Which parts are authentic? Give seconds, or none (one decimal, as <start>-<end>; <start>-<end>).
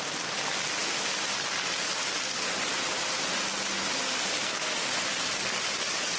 0.0-4.4; 4.9-6.2